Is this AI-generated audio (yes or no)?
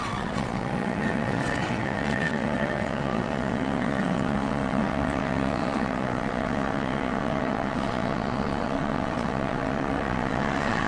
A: yes